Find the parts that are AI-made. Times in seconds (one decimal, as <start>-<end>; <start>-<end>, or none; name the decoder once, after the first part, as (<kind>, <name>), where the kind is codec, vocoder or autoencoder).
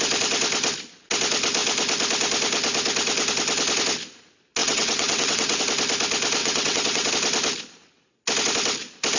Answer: 4.6-5.6 (vocoder, WaveNeXt); 6.4-7.1